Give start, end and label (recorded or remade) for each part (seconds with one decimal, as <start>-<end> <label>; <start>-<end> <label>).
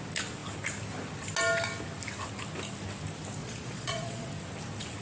0.0-3.4 recorded; 3.4-4.3 remade; 4.3-5.0 recorded